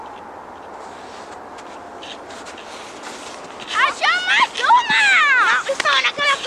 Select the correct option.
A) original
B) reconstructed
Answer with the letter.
A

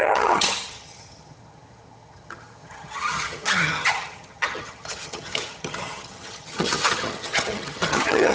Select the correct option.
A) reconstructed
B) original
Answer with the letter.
A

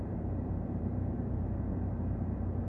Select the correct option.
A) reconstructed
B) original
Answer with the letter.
A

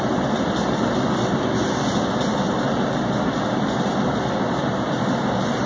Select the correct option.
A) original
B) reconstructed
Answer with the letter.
A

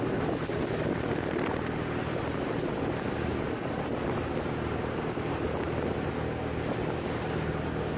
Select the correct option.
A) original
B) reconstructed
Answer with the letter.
A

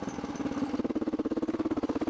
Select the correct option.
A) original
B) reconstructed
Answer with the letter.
A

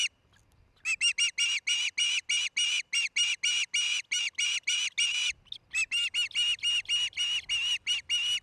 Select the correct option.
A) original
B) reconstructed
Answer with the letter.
A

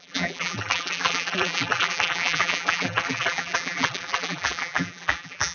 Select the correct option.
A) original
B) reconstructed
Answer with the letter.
B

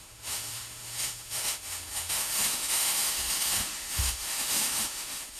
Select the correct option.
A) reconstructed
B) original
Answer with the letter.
A